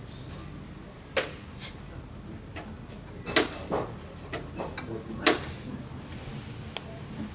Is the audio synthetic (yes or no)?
no